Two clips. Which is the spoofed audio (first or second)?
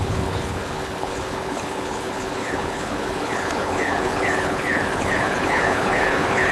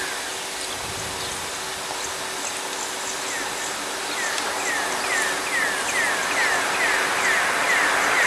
first